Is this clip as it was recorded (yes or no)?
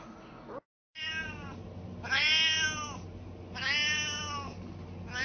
yes